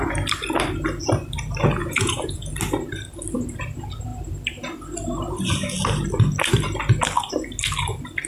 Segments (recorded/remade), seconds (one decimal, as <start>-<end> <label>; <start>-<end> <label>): 0.0-1.8 recorded; 1.8-2.5 remade; 2.5-8.3 recorded